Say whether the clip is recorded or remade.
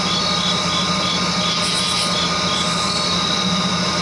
recorded